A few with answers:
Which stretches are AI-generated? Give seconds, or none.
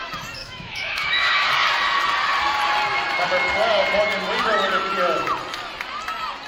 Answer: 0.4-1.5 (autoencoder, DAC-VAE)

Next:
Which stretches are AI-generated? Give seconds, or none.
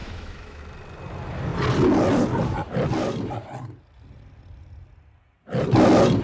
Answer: 0.0-0.6 (autoencoder, DAC-VAE)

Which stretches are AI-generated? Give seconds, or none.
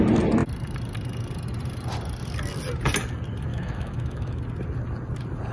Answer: 3.5-4.4 (autoencoder, DAC-VAE)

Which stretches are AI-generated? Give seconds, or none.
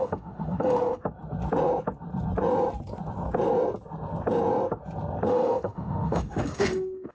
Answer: 0.0-1.0 (autoencoder, DAC-VAE); 5.3-7.1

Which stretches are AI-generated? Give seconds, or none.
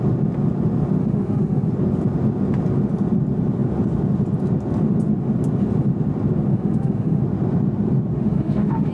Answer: 1.0-1.7 (autoencoder, DAC-VAE); 6.5-7.2; 8.1-8.9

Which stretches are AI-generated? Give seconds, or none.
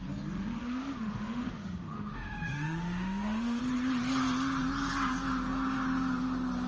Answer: 0.6-3.6 (autoencoder, DAC-VAE)